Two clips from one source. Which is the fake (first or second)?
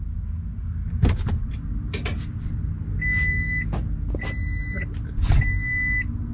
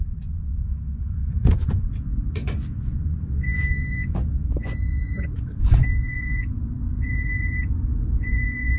second